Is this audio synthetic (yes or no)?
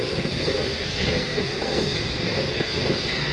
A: yes